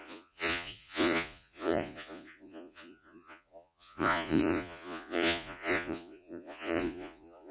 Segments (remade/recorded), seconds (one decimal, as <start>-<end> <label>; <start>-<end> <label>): 0.0-7.5 remade